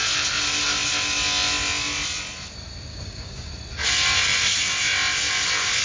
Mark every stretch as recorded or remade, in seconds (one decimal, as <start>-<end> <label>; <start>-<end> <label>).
0.0-2.9 recorded; 2.9-3.5 remade; 3.5-5.8 recorded